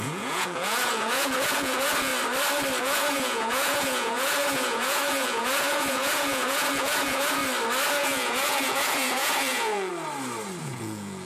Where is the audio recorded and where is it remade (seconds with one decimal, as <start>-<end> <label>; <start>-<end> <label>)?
0.0-2.1 remade; 2.1-2.8 recorded; 2.8-7.4 remade; 7.4-7.9 recorded; 7.9-9.9 remade; 9.9-10.6 recorded; 10.6-11.3 remade